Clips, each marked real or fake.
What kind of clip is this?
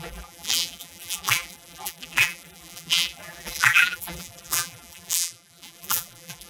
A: fake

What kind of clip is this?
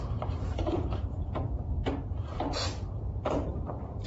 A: fake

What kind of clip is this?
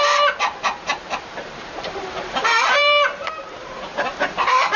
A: fake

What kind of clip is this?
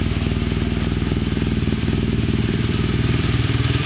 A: fake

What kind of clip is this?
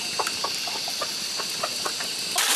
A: real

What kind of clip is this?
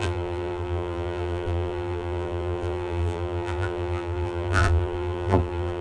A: fake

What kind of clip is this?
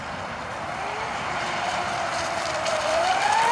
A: fake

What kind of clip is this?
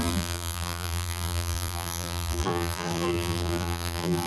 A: fake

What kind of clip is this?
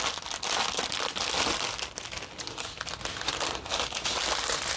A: real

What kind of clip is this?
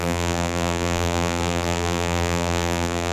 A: fake